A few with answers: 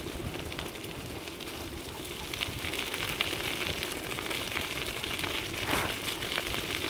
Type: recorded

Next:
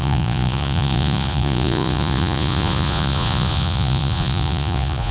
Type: remade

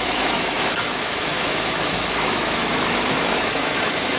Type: remade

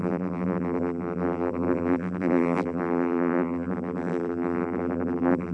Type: remade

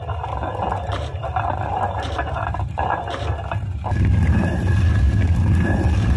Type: recorded